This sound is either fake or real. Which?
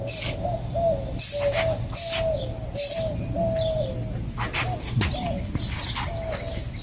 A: real